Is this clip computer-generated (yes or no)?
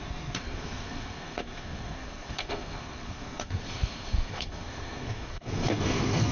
yes